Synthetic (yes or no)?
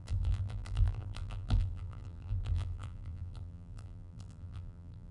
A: yes